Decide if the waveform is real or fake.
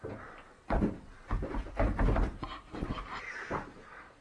fake